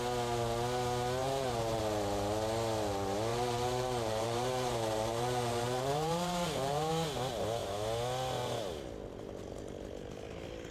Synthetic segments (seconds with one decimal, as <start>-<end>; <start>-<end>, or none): 1.2-1.8; 3.3-6.9